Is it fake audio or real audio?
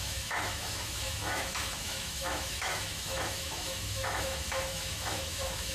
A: fake